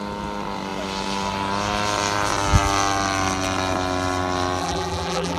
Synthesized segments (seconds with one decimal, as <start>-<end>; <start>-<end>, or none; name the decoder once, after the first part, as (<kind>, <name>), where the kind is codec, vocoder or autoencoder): 4.6-5.4 (vocoder, BigVGAN v2)